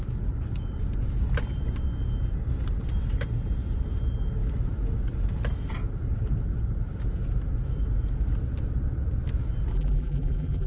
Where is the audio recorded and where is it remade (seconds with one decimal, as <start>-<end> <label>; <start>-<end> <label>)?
0.0-9.7 recorded; 9.7-10.7 remade

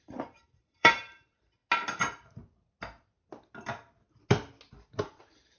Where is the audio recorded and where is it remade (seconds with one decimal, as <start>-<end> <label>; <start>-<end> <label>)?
0.0-1.6 remade; 1.6-5.0 recorded; 5.0-5.6 remade